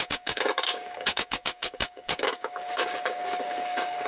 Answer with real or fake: fake